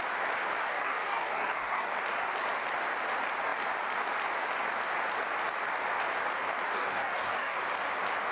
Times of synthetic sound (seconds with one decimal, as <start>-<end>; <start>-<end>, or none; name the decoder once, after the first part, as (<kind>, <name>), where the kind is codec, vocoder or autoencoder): 0.6-1.9 (codec, DAC); 6.7-7.6